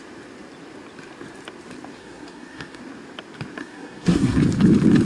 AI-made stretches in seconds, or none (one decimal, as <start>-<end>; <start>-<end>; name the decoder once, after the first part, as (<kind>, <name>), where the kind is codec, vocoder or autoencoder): 2.0-2.8 (codec, SNAC); 3.6-4.4